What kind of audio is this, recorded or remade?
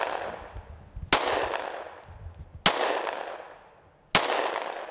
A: recorded